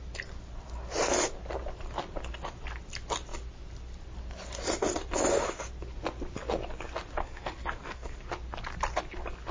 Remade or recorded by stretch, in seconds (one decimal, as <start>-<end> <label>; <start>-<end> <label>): 0.0-7.2 recorded; 7.2-8.2 remade; 8.2-9.5 recorded